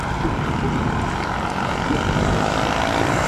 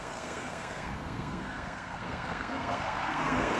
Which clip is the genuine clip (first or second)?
first